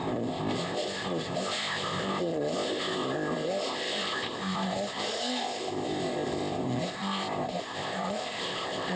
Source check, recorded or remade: remade